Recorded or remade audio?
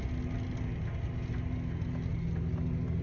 recorded